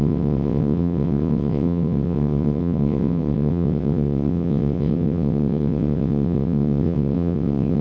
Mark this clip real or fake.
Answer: fake